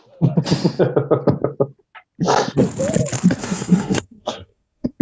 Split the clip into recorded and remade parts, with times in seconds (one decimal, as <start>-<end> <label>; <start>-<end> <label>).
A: 0.0-3.4 recorded; 3.4-5.0 remade